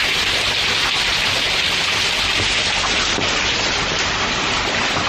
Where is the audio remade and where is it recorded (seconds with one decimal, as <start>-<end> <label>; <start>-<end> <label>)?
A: 0.0-3.0 recorded; 3.0-5.1 remade